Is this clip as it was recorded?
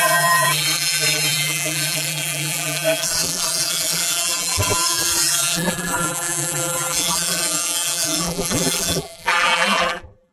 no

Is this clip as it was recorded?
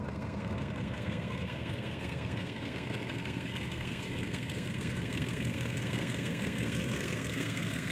no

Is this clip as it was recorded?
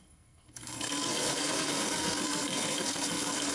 no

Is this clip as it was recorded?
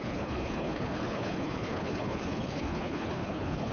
no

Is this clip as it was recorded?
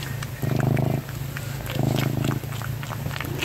yes